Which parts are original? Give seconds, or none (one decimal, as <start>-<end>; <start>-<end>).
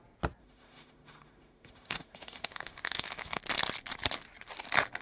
0.0-0.4; 3.4-5.0